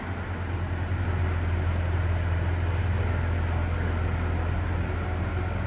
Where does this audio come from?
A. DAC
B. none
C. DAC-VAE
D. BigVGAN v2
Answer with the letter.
B